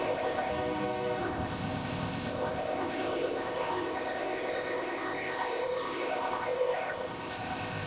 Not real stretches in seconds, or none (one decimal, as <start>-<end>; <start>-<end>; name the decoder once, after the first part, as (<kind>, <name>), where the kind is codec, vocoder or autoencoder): 0.0-0.5 (codec, ZipCodec); 1.2-7.9